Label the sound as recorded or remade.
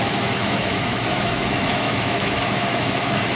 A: remade